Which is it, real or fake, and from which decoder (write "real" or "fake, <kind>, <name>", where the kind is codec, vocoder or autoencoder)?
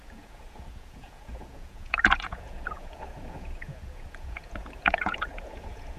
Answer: fake, vocoder, Vocos